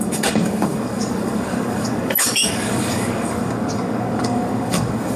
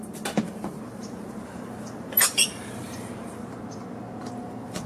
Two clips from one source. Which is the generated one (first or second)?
first